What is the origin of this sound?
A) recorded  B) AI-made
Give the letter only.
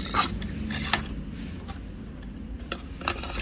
A